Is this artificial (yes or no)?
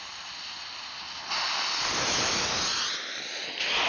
no